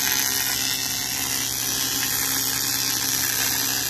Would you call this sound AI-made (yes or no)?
no